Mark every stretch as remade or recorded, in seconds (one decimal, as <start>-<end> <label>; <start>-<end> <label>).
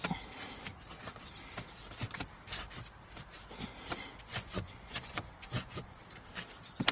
0.0-4.3 recorded; 4.3-6.0 remade; 6.0-6.9 recorded